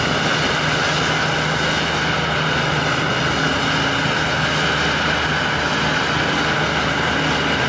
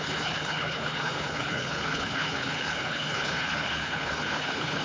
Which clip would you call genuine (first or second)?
first